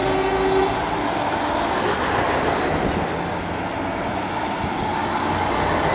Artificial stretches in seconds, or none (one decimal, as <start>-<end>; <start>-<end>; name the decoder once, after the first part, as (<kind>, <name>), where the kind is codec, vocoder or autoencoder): 5.0-5.9 (codec, DAC)